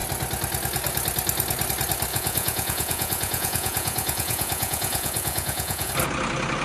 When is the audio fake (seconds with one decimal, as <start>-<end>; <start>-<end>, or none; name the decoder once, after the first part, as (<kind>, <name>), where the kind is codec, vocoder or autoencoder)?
2.1-5.9 (vocoder, Vocos)